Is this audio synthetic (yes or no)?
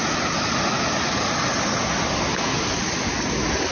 no